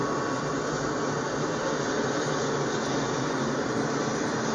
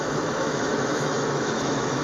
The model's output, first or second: second